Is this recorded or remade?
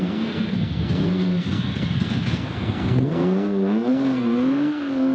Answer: remade